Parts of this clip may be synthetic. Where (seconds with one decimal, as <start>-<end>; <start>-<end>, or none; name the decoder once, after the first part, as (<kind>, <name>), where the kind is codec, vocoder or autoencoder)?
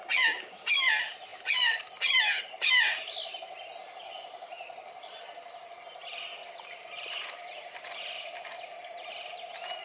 none